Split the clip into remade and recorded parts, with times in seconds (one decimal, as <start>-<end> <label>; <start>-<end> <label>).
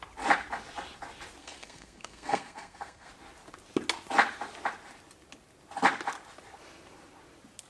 0.0-1.4 recorded; 1.4-3.1 remade; 3.1-7.7 recorded